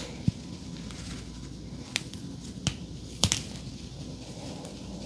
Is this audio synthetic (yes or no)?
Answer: no